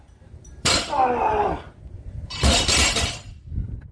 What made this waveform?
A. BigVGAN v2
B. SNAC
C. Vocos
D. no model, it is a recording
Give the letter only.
A